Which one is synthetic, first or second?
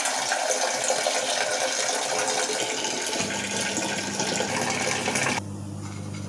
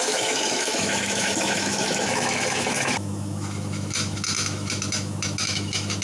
second